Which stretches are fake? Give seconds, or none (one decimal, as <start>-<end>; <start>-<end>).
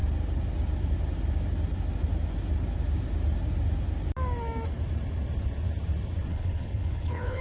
6.3-7.4